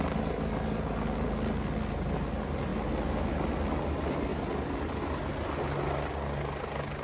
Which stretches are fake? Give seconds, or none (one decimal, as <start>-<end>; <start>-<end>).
none